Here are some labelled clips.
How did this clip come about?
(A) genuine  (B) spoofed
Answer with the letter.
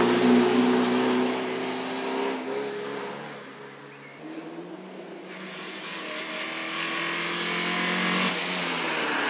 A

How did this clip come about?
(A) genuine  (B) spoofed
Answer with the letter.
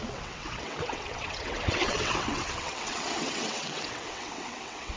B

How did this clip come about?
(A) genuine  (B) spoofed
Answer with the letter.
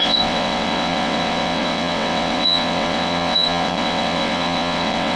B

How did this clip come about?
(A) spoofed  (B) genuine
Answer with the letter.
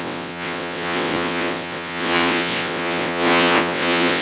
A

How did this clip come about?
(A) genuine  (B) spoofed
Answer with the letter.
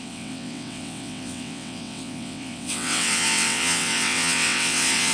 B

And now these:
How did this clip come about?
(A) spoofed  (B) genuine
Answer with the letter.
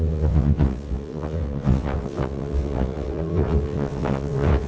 A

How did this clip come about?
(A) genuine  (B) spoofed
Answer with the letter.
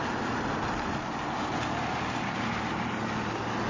A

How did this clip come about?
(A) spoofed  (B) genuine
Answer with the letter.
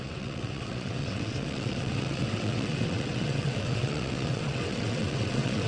A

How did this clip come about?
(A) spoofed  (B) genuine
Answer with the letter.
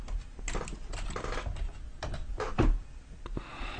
B